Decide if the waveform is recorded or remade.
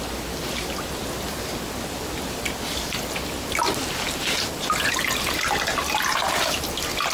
recorded